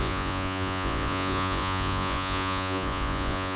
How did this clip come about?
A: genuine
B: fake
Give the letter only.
B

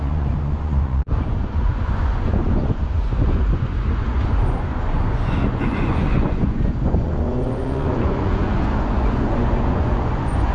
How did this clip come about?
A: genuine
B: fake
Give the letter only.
B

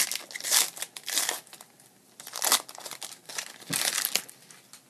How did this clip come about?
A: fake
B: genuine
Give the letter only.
B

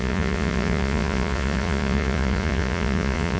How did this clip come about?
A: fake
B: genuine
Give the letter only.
A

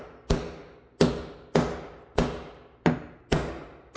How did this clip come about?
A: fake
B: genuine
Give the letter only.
B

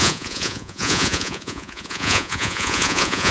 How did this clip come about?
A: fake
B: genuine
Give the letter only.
A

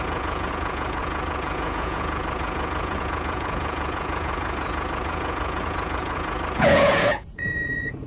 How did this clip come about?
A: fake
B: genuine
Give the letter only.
A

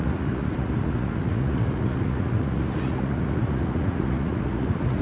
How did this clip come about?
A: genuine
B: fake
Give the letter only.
B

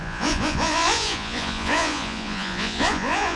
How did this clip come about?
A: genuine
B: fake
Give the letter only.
B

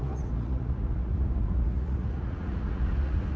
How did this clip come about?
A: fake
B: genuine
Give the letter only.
A